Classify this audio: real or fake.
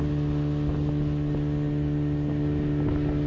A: real